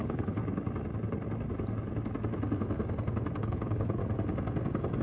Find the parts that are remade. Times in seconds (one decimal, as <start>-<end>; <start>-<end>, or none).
0.0-0.4; 3.4-4.0